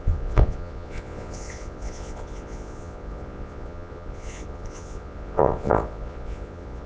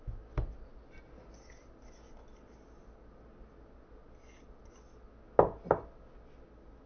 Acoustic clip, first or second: second